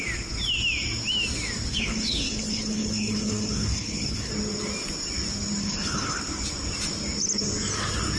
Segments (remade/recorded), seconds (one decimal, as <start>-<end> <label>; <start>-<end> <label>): 0.0-1.7 recorded; 1.7-4.3 remade; 4.3-5.6 recorded; 5.6-6.2 remade; 6.2-8.2 recorded